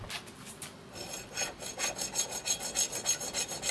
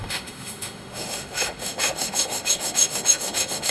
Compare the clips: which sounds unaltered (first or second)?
first